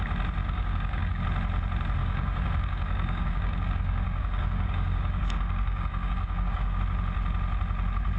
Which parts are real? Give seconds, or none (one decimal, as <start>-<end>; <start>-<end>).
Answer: 0.0-0.4; 1.2-2.0; 6.8-8.2